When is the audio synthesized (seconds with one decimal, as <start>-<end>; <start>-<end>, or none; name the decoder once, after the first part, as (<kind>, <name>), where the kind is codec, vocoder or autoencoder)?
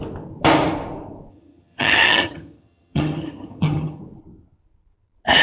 1.3-4.0 (vocoder, HiFi-GAN)